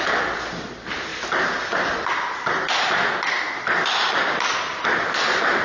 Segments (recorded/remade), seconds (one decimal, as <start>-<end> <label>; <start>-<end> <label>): 0.0-5.6 recorded